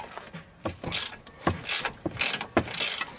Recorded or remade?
recorded